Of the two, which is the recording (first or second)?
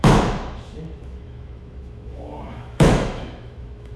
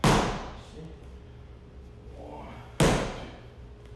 second